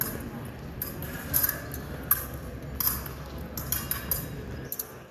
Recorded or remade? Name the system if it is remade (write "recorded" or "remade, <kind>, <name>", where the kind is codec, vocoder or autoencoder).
recorded